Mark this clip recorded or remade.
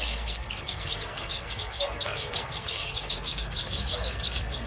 remade